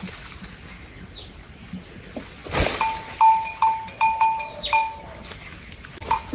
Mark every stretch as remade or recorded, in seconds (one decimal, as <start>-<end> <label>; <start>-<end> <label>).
0.0-6.3 recorded